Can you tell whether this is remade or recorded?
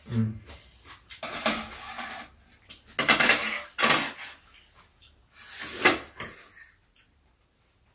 recorded